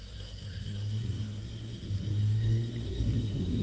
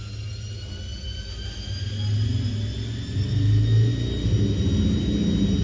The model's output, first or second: first